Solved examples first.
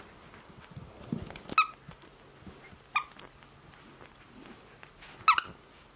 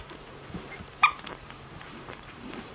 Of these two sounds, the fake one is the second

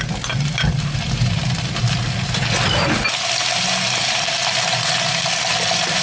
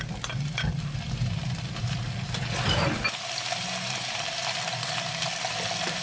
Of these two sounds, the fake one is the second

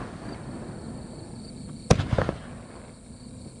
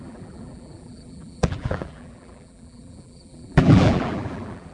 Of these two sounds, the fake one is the second